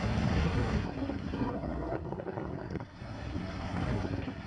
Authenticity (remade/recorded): remade